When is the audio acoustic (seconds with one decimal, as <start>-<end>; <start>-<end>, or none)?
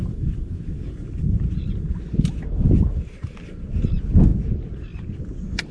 0.0-5.7